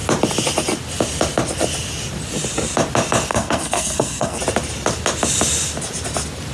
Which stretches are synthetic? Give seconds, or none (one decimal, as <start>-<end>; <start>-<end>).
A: 3.3-4.4